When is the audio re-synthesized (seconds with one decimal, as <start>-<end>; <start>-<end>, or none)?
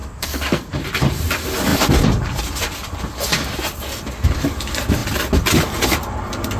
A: 0.0-0.7